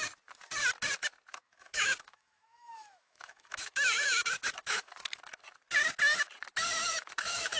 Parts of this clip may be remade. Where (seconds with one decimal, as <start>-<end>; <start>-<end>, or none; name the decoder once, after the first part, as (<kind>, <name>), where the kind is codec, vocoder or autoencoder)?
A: 1.3-4.9 (autoencoder, DAC-VAE); 6.8-7.6